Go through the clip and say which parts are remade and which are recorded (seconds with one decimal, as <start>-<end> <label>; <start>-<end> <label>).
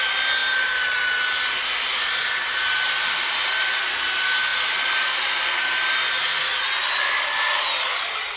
0.0-8.4 recorded